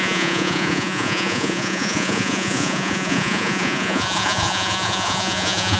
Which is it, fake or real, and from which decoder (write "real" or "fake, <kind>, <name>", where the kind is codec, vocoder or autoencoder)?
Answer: fake, vocoder, Vocos